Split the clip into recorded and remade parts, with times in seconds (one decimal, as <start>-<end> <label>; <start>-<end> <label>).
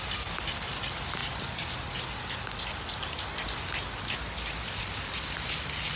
0.0-6.0 recorded